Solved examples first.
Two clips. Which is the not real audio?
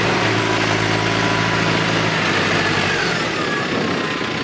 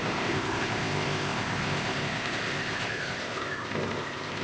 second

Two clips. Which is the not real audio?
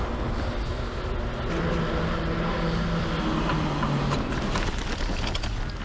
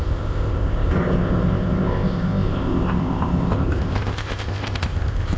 second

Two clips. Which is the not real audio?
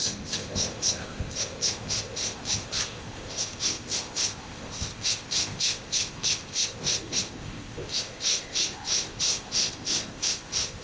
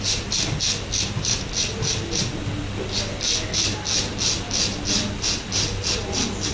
first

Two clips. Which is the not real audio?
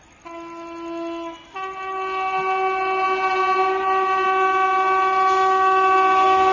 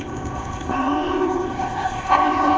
second